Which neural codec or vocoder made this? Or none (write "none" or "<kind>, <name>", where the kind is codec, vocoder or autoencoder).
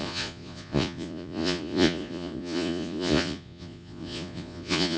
vocoder, Vocos